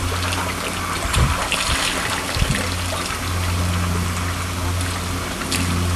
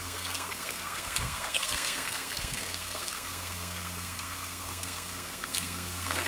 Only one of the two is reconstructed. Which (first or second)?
second